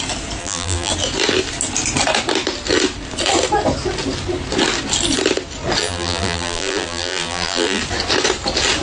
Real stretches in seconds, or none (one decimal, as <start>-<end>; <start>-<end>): 0.0-0.4; 0.9-5.8; 7.8-8.8